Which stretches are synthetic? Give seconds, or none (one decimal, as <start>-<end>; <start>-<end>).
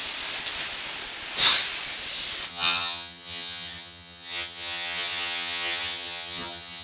2.5-6.8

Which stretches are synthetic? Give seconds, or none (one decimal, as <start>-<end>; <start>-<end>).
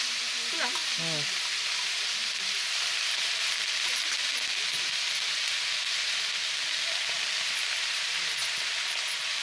0.0-9.4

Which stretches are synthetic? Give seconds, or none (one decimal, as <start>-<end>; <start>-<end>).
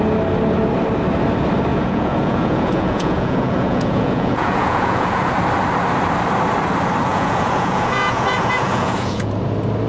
1.7-5.3; 7.1-9.3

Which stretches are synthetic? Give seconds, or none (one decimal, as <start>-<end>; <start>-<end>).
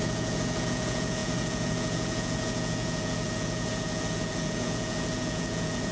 0.0-5.9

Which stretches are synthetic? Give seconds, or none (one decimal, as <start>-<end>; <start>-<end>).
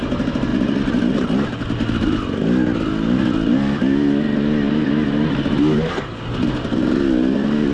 none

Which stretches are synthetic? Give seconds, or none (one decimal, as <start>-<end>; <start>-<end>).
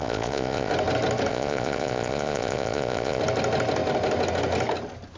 0.0-0.7; 1.3-3.2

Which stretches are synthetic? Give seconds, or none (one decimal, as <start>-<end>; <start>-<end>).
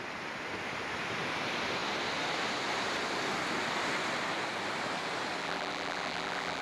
5.4-6.6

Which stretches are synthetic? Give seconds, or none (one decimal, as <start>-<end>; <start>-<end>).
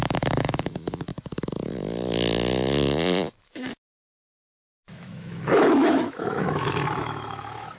0.0-7.8